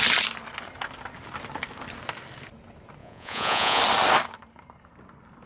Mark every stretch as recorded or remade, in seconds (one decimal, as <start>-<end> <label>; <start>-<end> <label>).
0.0-3.0 recorded; 3.0-3.8 remade; 3.8-5.5 recorded